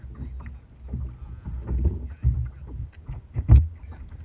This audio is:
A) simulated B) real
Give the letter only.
B